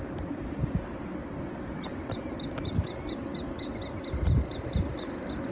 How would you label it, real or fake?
fake